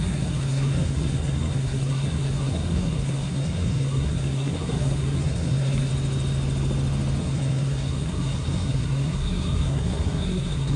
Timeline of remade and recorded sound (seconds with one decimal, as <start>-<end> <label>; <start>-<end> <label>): 0.0-5.9 remade; 5.9-7.2 recorded; 7.2-10.8 remade